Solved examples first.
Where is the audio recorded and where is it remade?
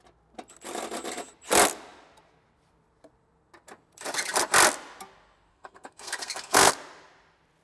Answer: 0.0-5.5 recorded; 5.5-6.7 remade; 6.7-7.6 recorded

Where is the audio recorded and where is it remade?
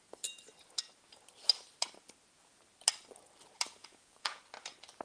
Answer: 0.0-3.8 recorded; 3.8-4.4 remade; 4.4-5.0 recorded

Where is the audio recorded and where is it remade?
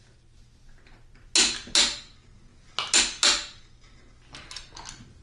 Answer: 0.0-5.2 recorded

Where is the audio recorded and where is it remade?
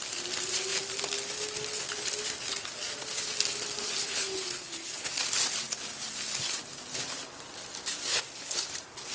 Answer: 0.0-3.8 recorded; 3.8-5.1 remade; 5.1-8.1 recorded; 8.1-8.7 remade; 8.7-9.1 recorded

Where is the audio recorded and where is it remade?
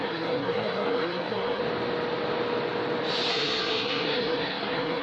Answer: 0.0-1.6 remade; 1.6-3.3 recorded; 3.3-5.0 remade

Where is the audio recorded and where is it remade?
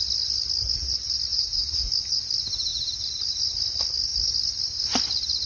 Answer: 0.0-1.3 recorded; 1.3-1.9 remade; 1.9-5.5 recorded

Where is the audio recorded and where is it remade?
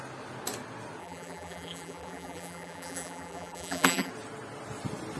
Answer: 0.0-1.0 recorded; 1.0-4.1 remade; 4.1-5.2 recorded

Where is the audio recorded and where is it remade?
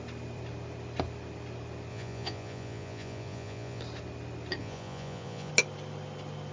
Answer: 0.0-1.9 recorded; 1.9-3.8 remade; 3.8-4.6 recorded; 4.6-5.5 remade; 5.5-6.5 recorded